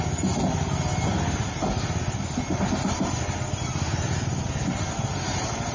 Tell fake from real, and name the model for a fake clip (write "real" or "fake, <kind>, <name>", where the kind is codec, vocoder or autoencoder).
real